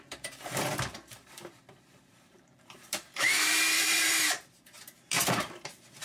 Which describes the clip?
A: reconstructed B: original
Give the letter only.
A